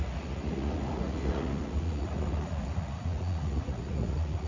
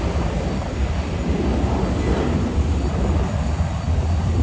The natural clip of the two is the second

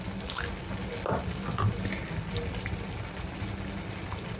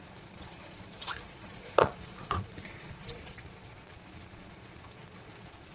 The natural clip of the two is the first